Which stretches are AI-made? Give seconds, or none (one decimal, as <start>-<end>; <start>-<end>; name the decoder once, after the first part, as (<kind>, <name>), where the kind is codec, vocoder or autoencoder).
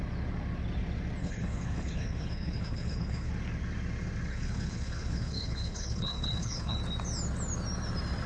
1.2-3.3 (codec, HILCodec); 4.3-6.8